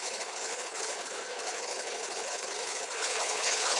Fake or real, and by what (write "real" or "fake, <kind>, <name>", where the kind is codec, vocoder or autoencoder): fake, codec, HILCodec